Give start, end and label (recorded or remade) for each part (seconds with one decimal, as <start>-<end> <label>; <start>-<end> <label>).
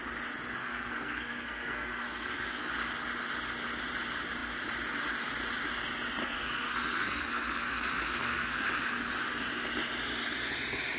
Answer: 0.0-0.6 recorded; 0.6-2.6 remade; 2.6-6.2 recorded; 6.2-8.7 remade; 8.7-11.0 recorded